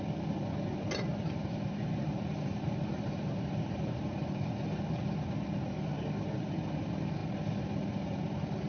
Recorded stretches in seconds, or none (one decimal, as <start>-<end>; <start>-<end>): 0.0-1.1; 4.5-8.7